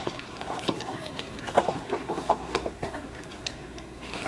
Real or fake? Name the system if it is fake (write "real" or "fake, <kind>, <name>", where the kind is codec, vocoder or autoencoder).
fake, codec, SNAC